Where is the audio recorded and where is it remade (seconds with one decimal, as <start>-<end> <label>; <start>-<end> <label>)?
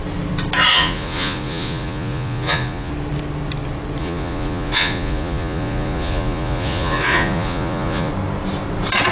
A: 0.0-0.7 recorded; 0.7-2.9 remade; 2.9-4.0 recorded; 4.0-8.1 remade; 8.1-9.1 recorded